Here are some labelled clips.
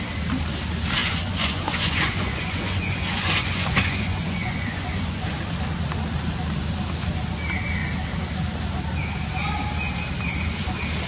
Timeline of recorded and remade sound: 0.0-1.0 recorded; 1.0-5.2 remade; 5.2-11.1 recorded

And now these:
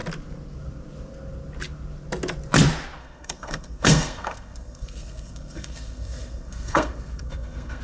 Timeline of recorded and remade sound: 0.0-3.0 recorded; 3.0-7.8 remade

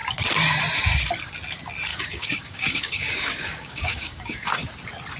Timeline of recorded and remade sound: 0.0-1.9 recorded; 1.9-4.7 remade; 4.7-5.2 recorded